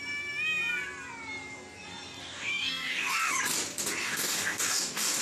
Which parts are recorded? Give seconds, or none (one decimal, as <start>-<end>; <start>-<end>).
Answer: 0.0-2.2; 3.3-4.0